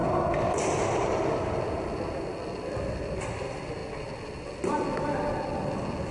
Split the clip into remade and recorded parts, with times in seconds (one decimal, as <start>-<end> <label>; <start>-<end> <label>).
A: 0.0-6.1 recorded